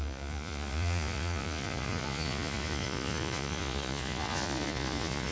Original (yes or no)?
no